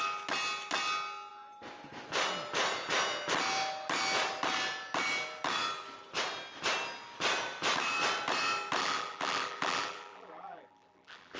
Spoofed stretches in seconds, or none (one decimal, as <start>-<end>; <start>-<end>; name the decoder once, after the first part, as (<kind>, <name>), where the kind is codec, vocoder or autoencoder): 8.8-11.4 (vocoder, BigVGAN v2)